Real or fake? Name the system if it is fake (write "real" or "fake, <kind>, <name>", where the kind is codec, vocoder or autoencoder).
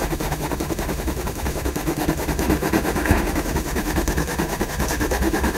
fake, autoencoder, DAC-VAE